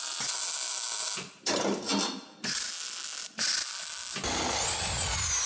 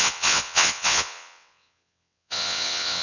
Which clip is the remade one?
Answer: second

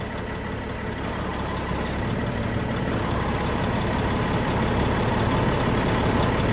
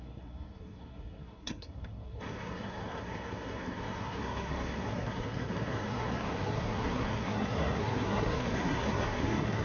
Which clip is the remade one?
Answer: second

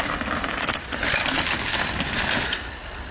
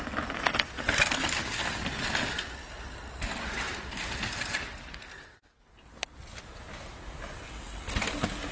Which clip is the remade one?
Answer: first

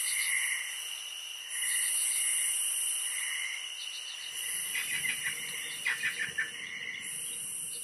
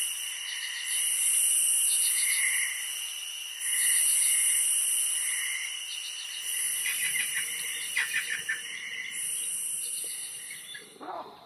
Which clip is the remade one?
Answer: second